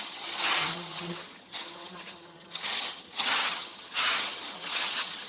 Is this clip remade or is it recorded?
remade